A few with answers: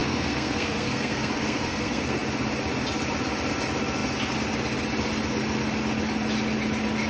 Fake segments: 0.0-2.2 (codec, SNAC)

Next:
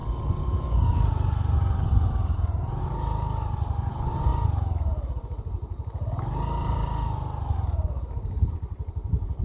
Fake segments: 2.8-4.3 (vocoder, BigVGAN v2); 8.5-9.4

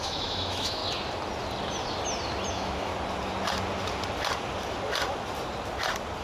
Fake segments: 0.0-0.8 (autoencoder, DAC-VAE); 2.5-2.9

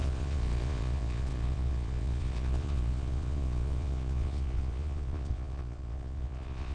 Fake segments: 0.0-6.7 (vocoder, Vocos)